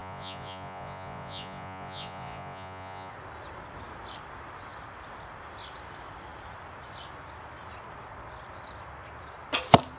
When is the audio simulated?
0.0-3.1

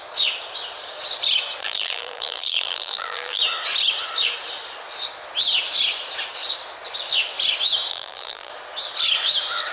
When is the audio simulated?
1.6-3.4; 7.9-8.5

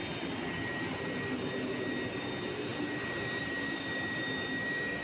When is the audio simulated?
none

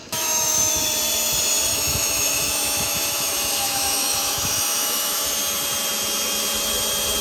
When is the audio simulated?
0.0-0.8; 1.7-5.4

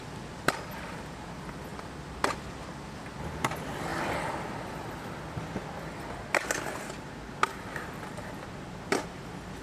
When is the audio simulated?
none

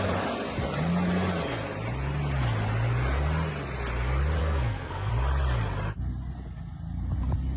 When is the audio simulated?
4.4-5.1

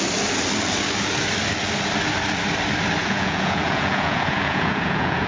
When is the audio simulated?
3.0-5.3